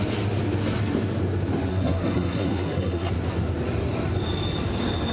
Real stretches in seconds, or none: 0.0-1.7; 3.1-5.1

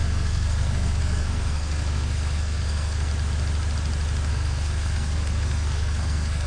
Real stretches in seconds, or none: 3.1-4.3

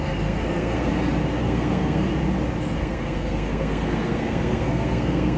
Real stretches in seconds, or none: 0.9-1.4; 2.1-2.8

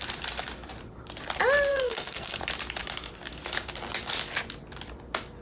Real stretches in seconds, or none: 0.0-1.7; 2.4-5.4

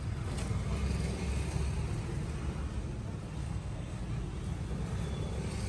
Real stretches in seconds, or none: 0.0-3.4; 4.0-5.7

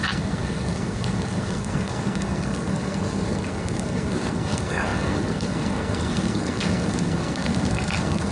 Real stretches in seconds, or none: none